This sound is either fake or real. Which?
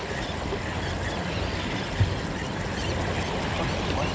real